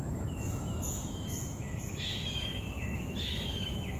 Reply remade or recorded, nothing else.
remade